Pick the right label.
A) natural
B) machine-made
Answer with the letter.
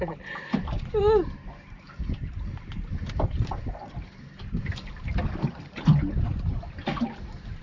A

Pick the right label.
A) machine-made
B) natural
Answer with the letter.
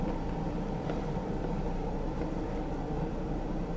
A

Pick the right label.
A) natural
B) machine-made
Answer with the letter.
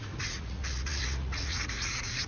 B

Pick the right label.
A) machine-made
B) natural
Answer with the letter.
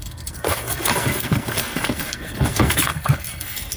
A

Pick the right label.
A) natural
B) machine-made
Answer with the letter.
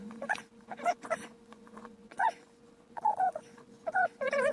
B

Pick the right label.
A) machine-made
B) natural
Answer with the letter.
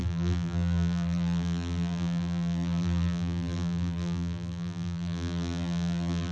A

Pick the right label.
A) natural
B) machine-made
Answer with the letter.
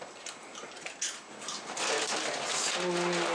A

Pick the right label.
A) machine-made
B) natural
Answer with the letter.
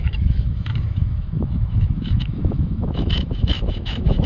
A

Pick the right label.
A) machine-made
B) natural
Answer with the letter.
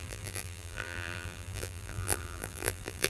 A